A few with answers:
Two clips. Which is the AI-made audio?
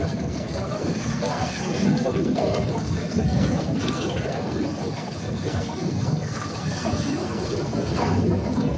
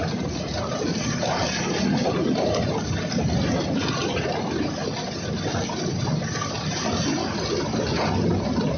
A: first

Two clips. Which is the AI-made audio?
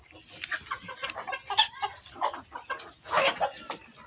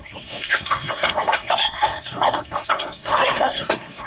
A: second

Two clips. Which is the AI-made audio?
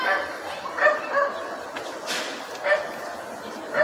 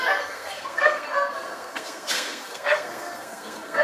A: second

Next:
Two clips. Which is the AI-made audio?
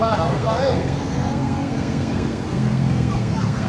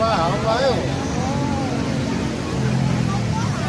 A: first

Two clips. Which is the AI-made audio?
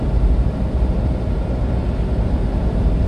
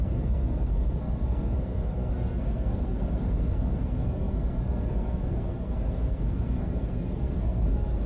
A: second